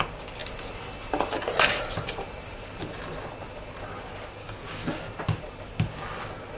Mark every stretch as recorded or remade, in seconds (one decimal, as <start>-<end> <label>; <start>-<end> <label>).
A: 0.0-4.4 recorded; 4.4-5.0 remade; 5.0-6.6 recorded